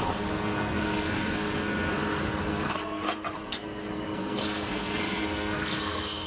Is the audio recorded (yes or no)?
no